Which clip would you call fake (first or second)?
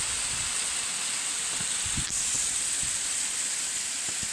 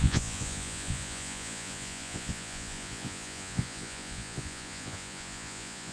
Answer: second